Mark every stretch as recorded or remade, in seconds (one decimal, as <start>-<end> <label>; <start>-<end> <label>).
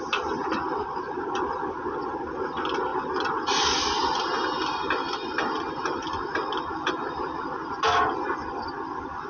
0.0-9.3 recorded